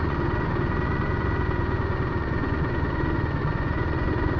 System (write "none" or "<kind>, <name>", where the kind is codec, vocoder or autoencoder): vocoder, Vocos